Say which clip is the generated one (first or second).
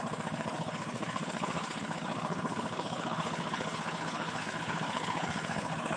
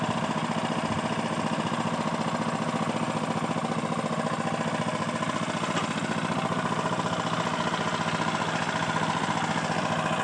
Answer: first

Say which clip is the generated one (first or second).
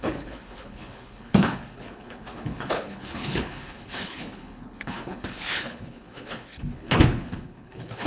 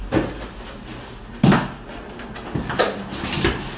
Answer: first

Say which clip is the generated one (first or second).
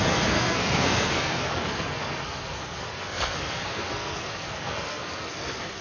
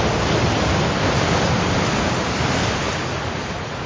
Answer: first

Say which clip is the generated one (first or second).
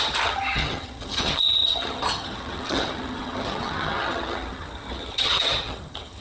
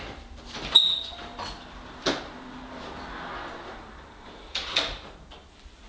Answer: first